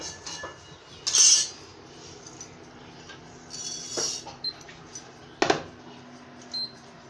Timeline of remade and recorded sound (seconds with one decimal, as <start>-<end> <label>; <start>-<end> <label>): 0.0-7.1 recorded